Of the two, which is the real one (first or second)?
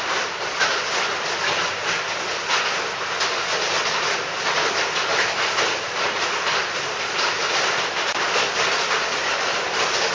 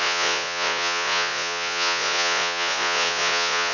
first